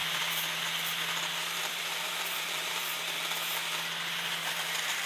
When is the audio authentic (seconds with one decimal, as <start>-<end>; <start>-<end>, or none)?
0.0-1.7; 3.0-4.4